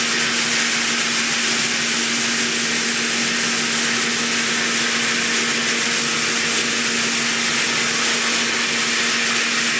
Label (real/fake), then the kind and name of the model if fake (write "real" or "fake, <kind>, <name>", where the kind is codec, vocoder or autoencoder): real